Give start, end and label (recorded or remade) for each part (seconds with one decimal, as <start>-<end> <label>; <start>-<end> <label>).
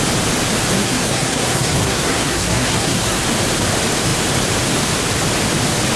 0.0-0.7 recorded; 0.7-3.2 remade; 3.2-6.0 recorded